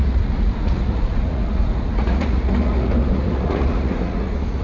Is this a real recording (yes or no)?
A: no